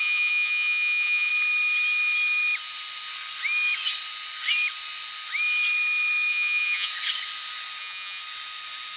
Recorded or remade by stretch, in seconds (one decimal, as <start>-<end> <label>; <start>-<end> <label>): 0.0-1.3 remade; 1.3-6.3 recorded; 6.3-6.9 remade; 6.9-7.8 recorded; 7.8-8.2 remade; 8.2-9.0 recorded